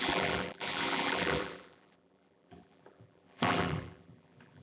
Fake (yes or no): yes